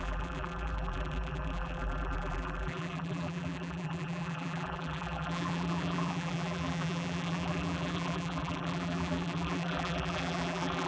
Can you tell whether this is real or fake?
fake